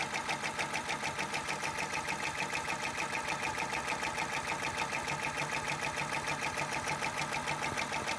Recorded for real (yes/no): yes